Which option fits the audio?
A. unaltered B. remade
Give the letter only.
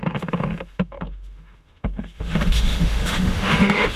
B